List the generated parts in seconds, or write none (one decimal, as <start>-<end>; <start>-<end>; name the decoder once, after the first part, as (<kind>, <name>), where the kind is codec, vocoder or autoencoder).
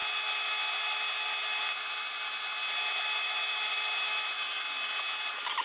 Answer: none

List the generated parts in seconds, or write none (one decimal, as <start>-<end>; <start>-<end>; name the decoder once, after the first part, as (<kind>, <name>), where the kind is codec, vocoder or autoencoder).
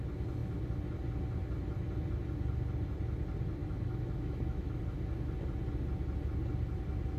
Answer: 3.6-4.8 (autoencoder, DAC-VAE)